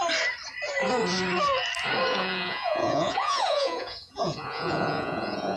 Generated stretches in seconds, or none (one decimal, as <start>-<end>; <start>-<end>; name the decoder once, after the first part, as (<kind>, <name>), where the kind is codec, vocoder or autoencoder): 2.1-5.6 (vocoder, Vocos)